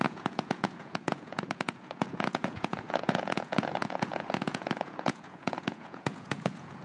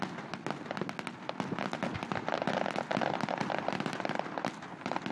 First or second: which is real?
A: second